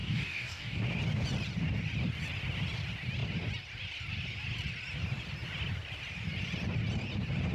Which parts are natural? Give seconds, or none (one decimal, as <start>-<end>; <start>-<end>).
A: 0.8-7.5

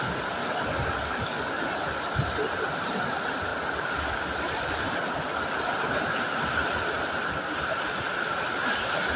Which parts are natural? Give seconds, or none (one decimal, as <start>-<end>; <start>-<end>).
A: 0.0-0.4; 1.5-9.2

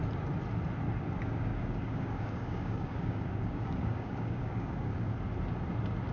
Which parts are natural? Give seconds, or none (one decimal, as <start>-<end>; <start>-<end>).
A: 0.0-1.5; 5.2-6.1

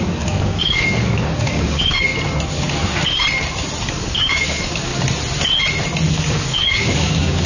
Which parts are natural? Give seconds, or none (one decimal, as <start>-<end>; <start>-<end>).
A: 2.1-3.9; 4.9-6.1

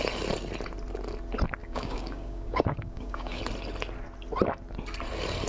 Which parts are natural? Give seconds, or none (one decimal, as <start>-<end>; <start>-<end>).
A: 0.0-1.6; 3.4-5.5

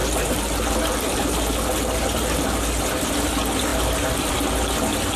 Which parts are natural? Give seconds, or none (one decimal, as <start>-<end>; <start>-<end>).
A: 0.0-5.2